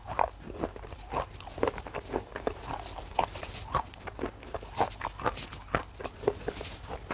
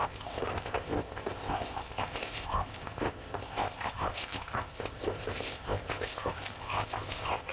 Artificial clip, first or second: second